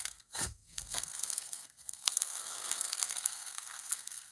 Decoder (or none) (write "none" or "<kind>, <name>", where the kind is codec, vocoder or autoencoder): codec, SNAC